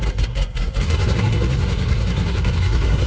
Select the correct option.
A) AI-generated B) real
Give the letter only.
A